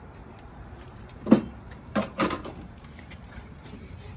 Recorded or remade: remade